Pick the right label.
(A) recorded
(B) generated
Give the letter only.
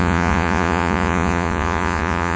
B